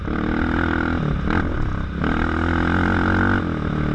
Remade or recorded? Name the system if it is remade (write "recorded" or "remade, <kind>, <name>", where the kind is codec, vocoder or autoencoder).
recorded